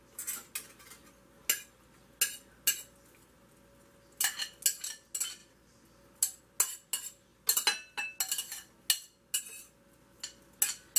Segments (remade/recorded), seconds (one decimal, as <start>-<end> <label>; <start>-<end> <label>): 0.0-11.0 recorded

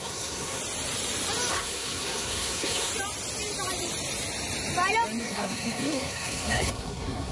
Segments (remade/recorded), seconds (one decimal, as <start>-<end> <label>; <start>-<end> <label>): 0.0-0.6 remade; 0.6-1.5 recorded; 1.5-2.9 remade; 2.9-5.2 recorded; 5.2-7.3 remade

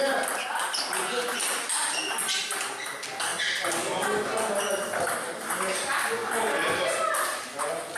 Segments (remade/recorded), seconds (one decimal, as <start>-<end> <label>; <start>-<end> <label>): 0.0-8.0 recorded

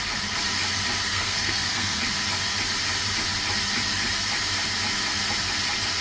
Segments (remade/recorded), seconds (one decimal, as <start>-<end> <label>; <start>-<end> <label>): 0.0-1.1 recorded; 1.1-2.0 remade; 2.0-6.0 recorded

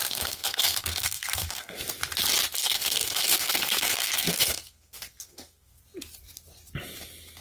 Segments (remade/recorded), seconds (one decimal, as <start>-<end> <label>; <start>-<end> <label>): 0.0-1.8 remade; 1.8-2.6 recorded; 2.6-5.8 remade; 5.8-7.4 recorded